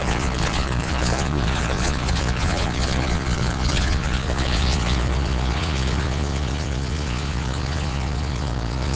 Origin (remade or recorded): remade